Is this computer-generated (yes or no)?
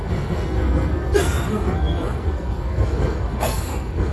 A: yes